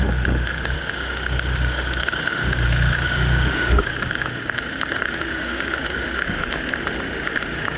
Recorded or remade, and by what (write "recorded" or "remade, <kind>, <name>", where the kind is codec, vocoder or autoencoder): remade, autoencoder, DAC-VAE